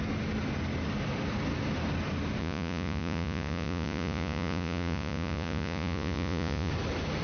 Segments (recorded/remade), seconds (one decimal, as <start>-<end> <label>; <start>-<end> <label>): 0.0-2.4 recorded; 2.4-6.7 remade; 6.7-7.2 recorded